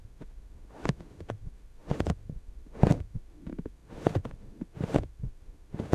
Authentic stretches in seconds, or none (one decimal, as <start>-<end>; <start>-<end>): none

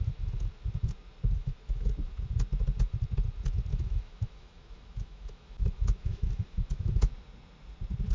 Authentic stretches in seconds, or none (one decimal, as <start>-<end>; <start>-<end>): 0.0-1.4; 1.9-3.7; 7.1-8.1